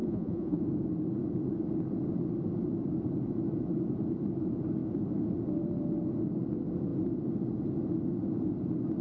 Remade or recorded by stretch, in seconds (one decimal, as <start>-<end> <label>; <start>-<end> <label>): 0.0-0.6 remade; 0.6-9.0 recorded